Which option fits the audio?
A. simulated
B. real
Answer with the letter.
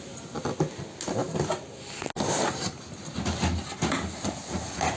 B